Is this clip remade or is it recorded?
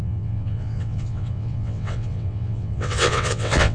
remade